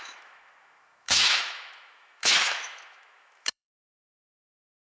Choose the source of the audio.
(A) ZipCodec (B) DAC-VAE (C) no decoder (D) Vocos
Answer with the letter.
B